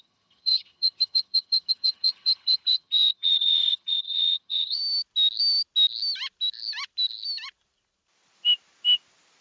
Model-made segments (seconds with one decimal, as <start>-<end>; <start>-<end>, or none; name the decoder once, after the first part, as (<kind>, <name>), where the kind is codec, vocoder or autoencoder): 0.0-4.8 (vocoder, HiFi-GAN)